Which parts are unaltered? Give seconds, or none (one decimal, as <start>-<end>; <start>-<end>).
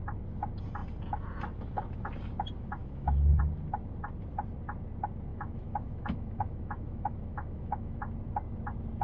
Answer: 0.0-2.8; 3.4-5.3; 8.0-9.0